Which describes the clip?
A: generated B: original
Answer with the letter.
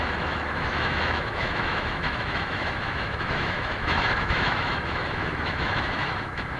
A